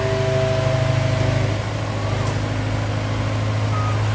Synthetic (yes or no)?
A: no